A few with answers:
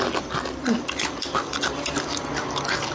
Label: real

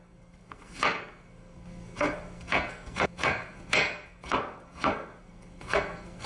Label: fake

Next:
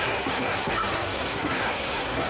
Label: fake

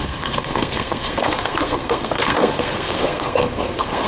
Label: fake